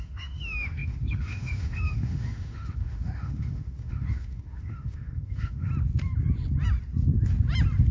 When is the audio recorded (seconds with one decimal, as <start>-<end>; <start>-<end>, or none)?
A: 5.7-7.9